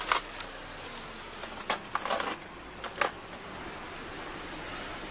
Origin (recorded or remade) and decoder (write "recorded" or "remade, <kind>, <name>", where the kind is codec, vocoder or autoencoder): recorded